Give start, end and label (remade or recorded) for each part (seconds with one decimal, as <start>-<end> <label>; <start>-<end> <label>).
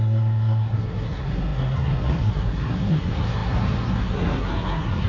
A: 0.0-5.1 remade